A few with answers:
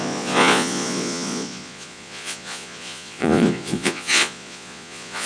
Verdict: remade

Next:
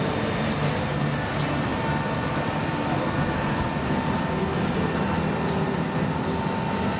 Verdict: recorded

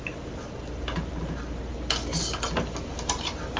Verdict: recorded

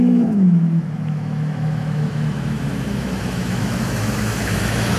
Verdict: remade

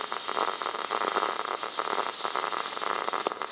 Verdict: recorded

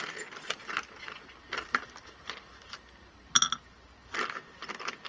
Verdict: recorded